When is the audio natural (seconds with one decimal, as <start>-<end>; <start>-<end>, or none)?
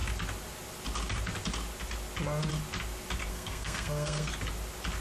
0.0-3.3; 4.3-5.0